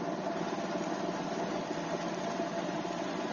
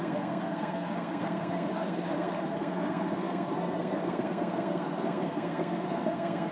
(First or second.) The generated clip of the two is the second